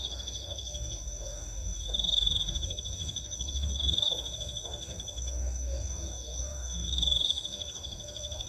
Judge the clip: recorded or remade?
remade